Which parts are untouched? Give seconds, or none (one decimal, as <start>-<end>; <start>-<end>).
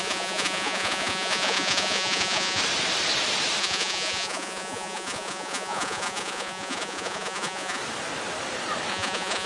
2.6-3.6; 7.8-8.9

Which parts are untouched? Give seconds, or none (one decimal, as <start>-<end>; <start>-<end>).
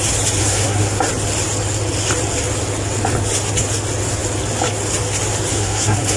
0.0-0.4; 1.0-5.5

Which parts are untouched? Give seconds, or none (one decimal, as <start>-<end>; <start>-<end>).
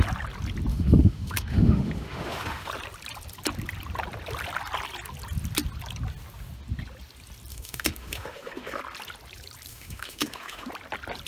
0.0-0.7; 2.7-7.5; 8.8-9.7; 10.7-11.3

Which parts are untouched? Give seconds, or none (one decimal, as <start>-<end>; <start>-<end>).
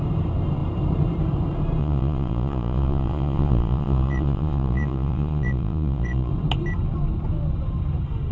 0.0-1.8; 6.3-8.3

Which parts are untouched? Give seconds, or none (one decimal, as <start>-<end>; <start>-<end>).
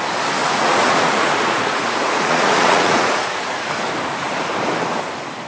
0.0-0.4; 3.7-5.5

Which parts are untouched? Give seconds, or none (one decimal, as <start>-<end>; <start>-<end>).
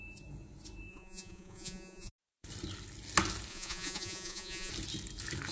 0.0-0.9; 2.1-3.5; 4.7-5.5